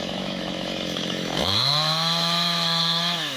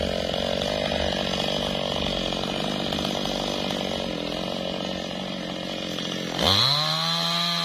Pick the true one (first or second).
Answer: second